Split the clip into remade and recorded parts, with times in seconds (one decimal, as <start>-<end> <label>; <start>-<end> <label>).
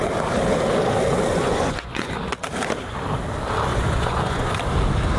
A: 0.0-1.3 recorded; 1.3-2.1 remade; 2.1-3.7 recorded; 3.7-4.5 remade; 4.5-5.2 recorded